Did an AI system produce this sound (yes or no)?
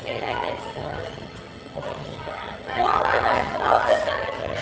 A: yes